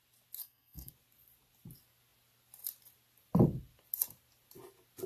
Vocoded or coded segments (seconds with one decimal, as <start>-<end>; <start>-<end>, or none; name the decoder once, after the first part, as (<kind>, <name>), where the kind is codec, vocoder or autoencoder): 0.4-0.9 (codec, SNAC)